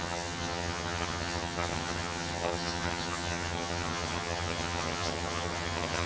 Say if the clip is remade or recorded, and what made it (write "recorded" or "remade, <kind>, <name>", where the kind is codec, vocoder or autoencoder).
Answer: remade, vocoder, HiFi-GAN